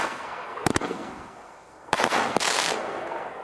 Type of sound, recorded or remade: remade